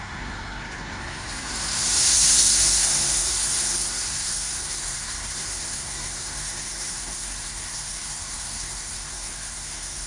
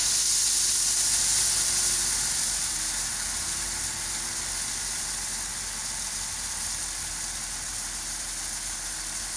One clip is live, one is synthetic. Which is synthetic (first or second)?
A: first